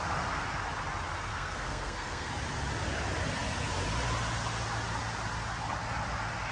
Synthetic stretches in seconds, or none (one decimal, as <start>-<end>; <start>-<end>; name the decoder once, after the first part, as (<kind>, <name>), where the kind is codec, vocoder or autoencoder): 1.3-2.3 (codec, SNAC)